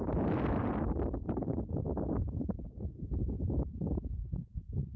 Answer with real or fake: real